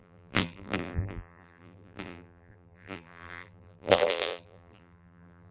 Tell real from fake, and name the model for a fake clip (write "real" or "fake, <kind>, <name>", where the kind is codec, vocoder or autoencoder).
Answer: fake, vocoder, BigVGAN v2